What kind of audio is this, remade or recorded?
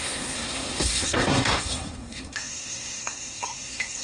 remade